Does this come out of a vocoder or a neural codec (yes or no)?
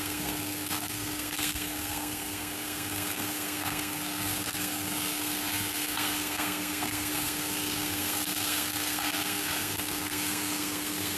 yes